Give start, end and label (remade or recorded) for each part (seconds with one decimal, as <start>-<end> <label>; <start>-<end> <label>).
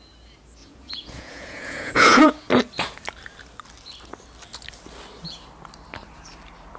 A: 0.0-0.6 recorded; 0.6-2.3 remade; 2.3-6.8 recorded